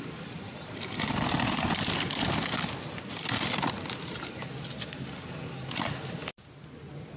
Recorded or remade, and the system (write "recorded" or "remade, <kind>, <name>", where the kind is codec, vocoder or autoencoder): recorded